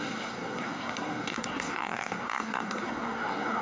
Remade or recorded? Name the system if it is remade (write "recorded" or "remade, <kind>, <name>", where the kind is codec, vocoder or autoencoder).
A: remade, codec, SNAC